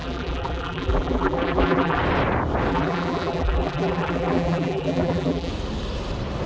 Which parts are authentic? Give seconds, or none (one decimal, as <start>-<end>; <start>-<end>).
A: 2.0-2.7; 5.5-6.5